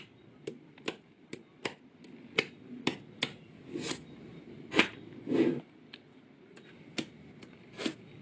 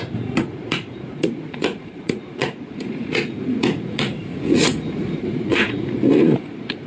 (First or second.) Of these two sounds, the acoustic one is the first